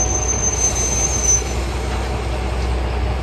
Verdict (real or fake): real